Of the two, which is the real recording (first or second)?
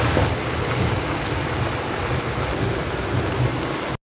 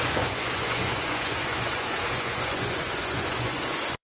first